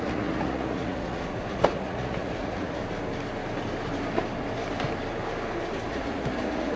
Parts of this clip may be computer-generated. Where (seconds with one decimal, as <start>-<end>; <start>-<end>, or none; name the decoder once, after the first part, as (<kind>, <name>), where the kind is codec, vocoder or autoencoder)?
0.0-2.8 (vocoder, Vocos); 5.9-6.8